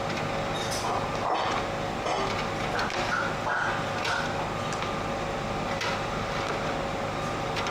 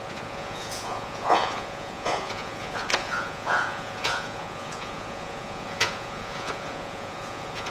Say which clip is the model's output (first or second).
second